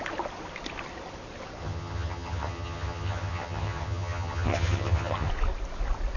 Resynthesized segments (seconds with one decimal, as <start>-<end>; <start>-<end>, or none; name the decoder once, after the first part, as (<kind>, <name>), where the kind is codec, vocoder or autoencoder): 1.6-5.3 (vocoder, HiFi-GAN)

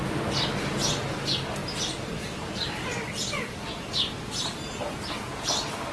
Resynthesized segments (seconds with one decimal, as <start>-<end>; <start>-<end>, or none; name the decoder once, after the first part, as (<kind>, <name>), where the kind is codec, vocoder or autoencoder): none

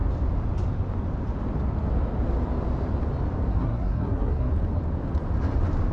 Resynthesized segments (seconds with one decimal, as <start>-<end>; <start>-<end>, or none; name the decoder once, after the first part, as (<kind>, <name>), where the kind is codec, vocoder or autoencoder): 3.5-4.5 (codec, SNAC)